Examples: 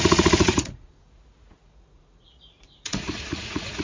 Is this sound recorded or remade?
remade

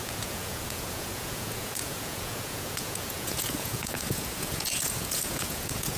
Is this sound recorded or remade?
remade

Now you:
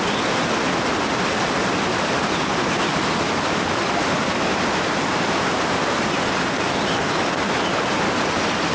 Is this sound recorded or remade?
recorded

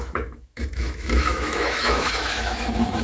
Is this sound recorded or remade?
remade